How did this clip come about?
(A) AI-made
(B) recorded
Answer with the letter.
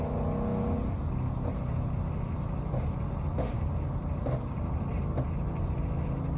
B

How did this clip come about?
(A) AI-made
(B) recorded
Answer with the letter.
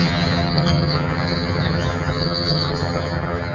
A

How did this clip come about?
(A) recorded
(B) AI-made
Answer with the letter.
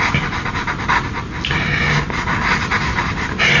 A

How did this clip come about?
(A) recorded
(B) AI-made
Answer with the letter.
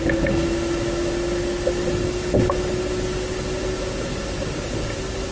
A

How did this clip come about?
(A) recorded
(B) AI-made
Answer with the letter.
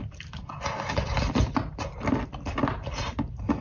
A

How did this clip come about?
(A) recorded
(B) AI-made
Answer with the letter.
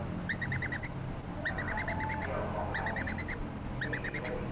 A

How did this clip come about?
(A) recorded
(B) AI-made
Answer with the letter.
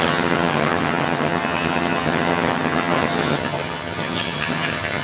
B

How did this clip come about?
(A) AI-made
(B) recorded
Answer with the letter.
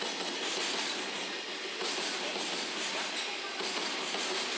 B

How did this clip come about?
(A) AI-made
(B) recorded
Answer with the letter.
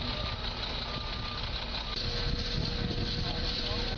B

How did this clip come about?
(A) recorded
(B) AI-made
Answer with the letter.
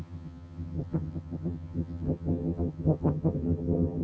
B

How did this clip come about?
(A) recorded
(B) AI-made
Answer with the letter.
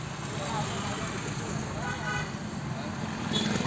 A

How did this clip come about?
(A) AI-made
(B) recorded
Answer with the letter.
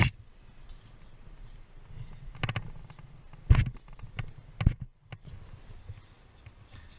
B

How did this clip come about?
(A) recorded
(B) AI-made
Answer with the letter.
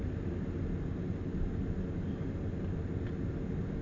A